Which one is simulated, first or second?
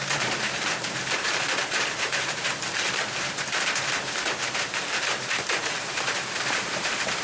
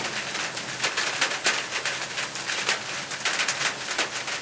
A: first